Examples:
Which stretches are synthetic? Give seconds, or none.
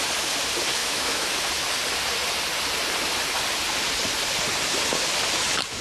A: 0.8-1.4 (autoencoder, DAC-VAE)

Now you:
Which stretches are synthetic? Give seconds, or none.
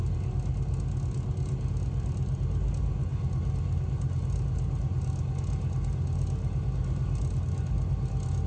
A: none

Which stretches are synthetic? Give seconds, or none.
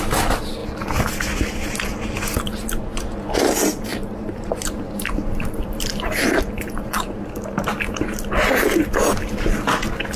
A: 3.9-7.3 (vocoder, BigVGAN v2)